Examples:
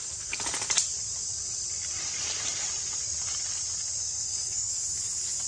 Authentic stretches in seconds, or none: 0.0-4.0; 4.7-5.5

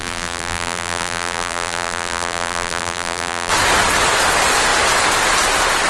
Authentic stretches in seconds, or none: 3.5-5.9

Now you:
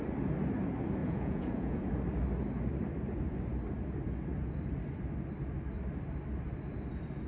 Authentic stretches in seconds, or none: 0.0-1.0; 1.8-7.3

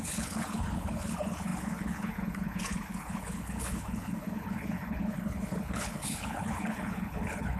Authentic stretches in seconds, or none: none

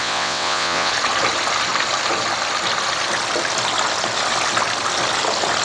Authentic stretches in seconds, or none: 0.9-5.6

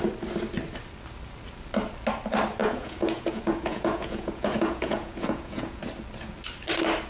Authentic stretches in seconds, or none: 0.0-2.6; 5.8-7.1

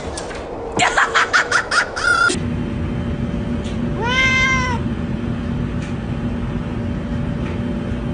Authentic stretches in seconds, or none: 0.0-1.0; 2.0-8.1

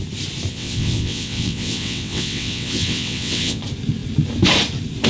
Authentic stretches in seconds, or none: 0.0-0.5; 3.6-5.1